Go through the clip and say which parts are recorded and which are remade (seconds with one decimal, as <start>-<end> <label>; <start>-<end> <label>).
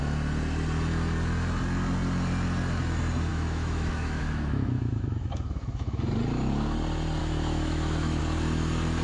0.0-3.3 recorded; 3.3-6.0 remade; 6.0-7.2 recorded; 7.2-8.2 remade; 8.2-9.0 recorded